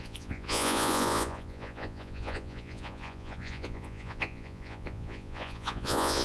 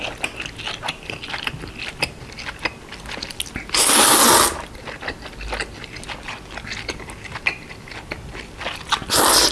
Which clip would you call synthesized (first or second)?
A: first